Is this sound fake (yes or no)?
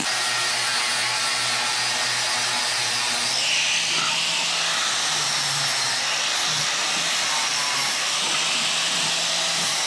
no